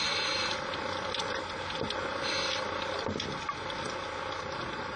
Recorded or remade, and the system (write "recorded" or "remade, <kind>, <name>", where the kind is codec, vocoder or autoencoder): recorded